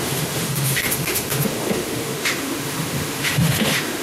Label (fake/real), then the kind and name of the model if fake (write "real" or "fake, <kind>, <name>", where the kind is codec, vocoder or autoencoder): fake, autoencoder, DAC-VAE